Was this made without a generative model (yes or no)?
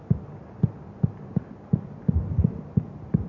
yes